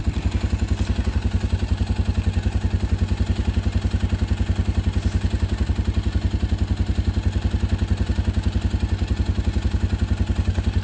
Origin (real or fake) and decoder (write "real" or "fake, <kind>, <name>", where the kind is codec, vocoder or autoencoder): real